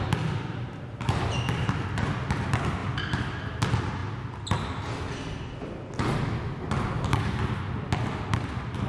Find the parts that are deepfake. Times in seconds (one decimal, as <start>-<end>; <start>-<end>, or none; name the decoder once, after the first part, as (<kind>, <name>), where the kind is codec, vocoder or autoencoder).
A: none